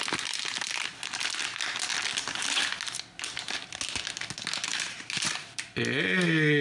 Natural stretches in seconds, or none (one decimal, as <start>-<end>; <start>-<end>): 0.0-4.7; 5.8-6.6